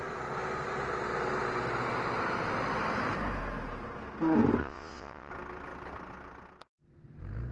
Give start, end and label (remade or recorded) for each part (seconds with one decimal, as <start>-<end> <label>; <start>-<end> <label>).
0.0-4.6 recorded; 4.6-5.3 remade; 5.3-7.5 recorded